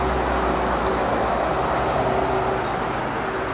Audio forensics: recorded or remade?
recorded